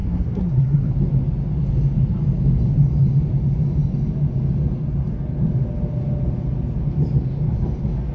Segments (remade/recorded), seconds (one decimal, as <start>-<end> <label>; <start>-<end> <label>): 0.0-0.9 remade; 0.9-8.1 recorded